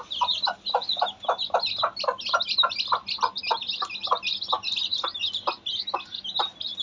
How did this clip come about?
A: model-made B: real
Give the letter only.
B